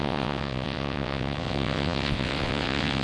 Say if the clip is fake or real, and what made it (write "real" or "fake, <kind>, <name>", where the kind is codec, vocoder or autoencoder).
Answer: fake, vocoder, WaveNeXt